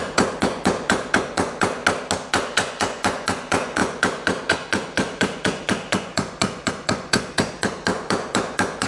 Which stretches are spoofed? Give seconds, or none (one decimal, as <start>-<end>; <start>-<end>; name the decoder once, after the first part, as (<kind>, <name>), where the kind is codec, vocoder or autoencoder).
0.0-1.8 (vocoder, Vocos); 2.3-8.9